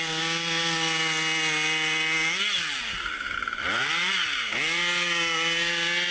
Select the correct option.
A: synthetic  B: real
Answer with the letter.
B